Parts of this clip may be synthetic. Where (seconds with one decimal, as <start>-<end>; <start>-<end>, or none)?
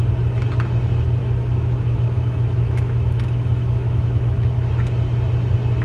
1.2-4.7